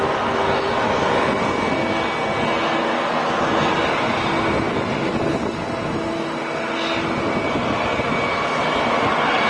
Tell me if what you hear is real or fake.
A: real